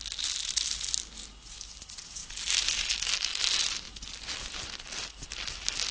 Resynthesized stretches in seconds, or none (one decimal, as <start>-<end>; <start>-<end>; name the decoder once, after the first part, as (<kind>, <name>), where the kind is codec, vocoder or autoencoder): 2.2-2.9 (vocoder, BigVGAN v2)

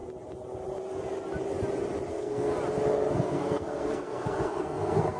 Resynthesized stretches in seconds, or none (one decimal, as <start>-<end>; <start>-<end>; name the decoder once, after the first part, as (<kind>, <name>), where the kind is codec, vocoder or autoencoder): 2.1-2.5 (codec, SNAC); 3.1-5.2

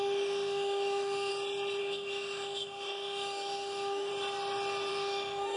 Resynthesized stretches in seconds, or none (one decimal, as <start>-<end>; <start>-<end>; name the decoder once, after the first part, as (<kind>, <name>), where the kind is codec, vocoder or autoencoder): 0.0-1.3 (autoencoder, DAC-VAE); 1.8-4.1; 4.9-5.6